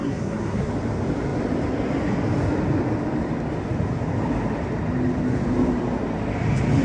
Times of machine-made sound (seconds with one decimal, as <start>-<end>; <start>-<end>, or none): 0.0-0.7